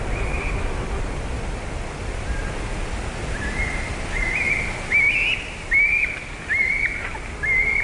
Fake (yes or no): no